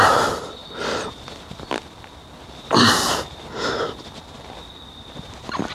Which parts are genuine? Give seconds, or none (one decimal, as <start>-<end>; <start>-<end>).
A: 0.6-3.5